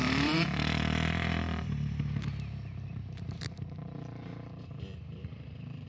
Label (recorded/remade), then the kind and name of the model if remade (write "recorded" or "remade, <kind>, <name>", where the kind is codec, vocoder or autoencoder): remade, vocoder, BigVGAN v2